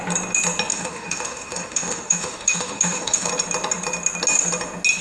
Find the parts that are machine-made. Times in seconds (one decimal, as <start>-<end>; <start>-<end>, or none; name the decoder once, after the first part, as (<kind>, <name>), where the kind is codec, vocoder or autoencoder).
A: 0.7-3.3 (autoencoder, DAC-VAE)